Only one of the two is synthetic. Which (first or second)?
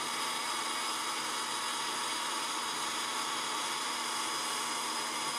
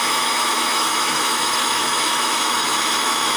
second